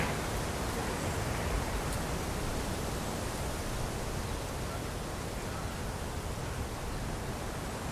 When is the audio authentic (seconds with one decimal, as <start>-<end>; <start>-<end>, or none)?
0.0-0.8; 1.9-7.9